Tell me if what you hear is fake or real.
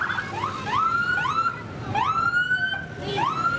real